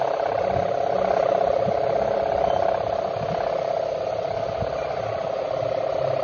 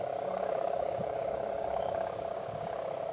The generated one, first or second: second